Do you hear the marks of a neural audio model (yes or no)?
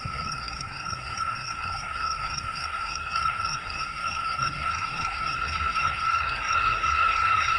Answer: yes